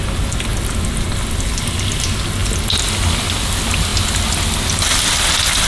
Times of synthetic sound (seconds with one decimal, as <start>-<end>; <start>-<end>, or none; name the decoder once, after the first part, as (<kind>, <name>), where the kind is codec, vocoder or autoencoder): none